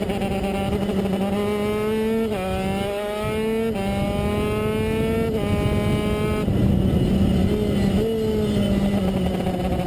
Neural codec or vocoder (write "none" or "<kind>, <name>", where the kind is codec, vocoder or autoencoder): none